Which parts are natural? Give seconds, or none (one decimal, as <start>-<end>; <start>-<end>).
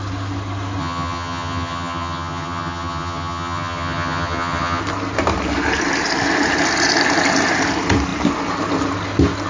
0.0-0.8; 4.8-9.5